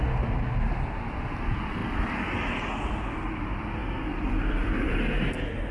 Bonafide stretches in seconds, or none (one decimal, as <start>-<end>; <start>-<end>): 0.0-3.8; 5.3-5.7